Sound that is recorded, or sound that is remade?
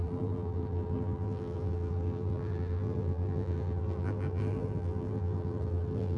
remade